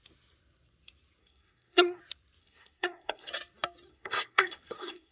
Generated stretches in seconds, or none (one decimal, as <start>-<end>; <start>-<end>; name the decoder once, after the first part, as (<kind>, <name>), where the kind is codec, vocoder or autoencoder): 1.2-2.0 (codec, SNAC); 2.4-3.3; 3.9-5.1